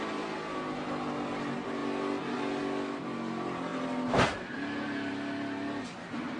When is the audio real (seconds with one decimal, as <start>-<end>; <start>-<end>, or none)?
0.0-6.4